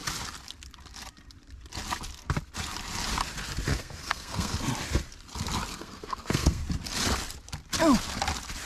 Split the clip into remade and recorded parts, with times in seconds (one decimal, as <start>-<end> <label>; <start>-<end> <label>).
0.0-3.7 recorded; 3.7-4.5 remade; 4.5-5.7 recorded; 5.7-6.6 remade; 6.6-8.7 recorded